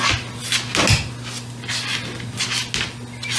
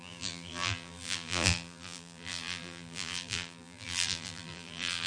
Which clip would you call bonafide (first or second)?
first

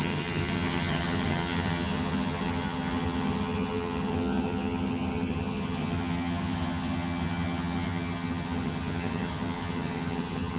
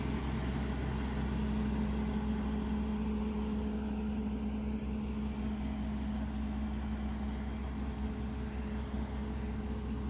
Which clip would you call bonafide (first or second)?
second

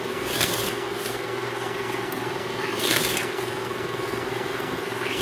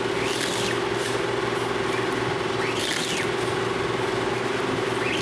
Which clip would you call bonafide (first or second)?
second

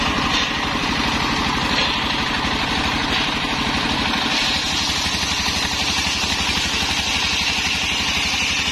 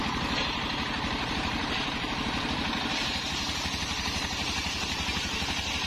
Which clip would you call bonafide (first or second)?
first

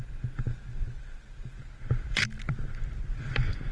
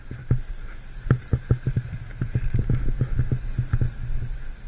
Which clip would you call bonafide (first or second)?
second